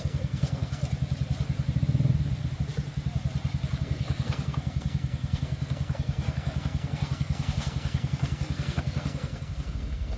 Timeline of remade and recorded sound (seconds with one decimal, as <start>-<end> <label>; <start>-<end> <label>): 0.0-0.8 remade; 0.8-3.8 recorded; 3.8-10.2 remade